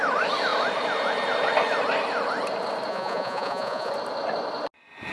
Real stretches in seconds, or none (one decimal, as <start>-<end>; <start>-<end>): 0.0-2.9; 3.9-5.1